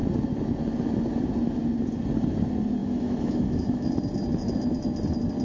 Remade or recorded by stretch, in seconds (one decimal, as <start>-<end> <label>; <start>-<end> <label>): 0.0-2.8 recorded; 2.8-3.9 remade; 3.9-5.4 recorded